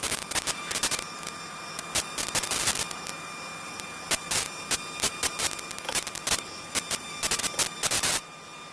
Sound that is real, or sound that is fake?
real